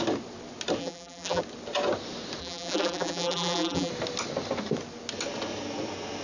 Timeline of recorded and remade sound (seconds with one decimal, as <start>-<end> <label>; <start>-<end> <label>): 0.0-0.8 recorded; 0.8-1.4 remade; 1.4-2.4 recorded; 2.4-3.9 remade; 3.9-6.2 recorded